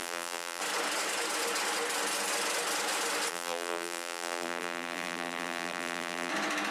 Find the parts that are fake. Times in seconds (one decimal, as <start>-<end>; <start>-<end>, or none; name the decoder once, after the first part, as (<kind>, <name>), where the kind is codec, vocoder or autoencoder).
0.0-0.6 (vocoder, BigVGAN v2); 3.3-6.3